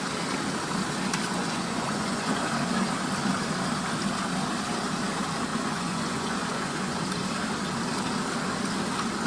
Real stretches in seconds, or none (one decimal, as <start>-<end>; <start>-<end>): 0.0-1.3; 2.5-5.5; 7.0-9.3